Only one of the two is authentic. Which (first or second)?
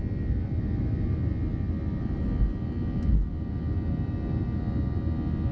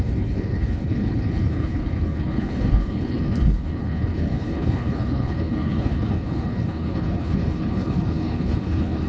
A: first